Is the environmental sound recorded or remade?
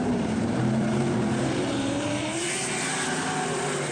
remade